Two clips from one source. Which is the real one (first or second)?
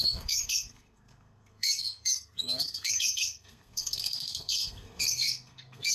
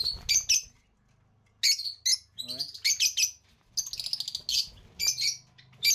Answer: second